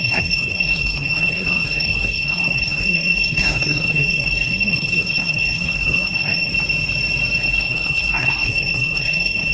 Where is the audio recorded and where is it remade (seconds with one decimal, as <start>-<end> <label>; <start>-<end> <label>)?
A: 0.0-6.5 remade; 6.5-7.5 recorded; 7.5-9.5 remade